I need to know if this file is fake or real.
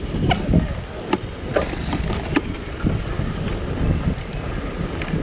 real